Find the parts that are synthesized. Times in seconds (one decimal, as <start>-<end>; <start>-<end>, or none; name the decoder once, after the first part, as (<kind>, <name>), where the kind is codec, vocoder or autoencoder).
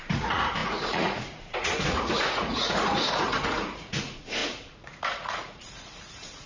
0.0-6.5 (vocoder, Vocos)